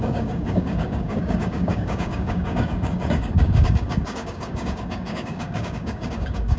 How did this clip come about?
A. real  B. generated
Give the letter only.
B